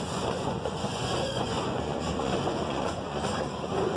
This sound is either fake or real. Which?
fake